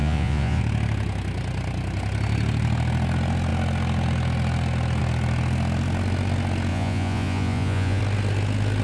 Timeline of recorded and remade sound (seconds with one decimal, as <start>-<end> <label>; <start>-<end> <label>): 0.0-0.6 remade; 0.6-6.7 recorded; 6.7-8.0 remade; 8.0-8.8 recorded